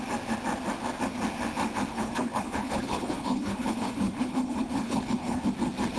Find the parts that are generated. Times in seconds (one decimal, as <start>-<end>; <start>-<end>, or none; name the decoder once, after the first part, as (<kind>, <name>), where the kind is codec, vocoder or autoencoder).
1.9-5.5 (codec, HILCodec)